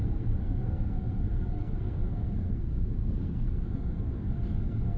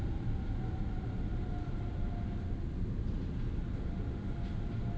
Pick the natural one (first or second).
second